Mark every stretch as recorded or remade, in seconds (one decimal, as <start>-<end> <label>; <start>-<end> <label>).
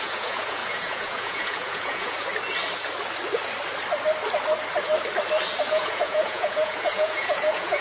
0.0-2.3 remade; 2.3-5.7 recorded; 5.7-7.8 remade